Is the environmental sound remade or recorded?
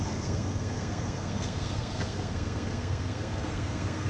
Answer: remade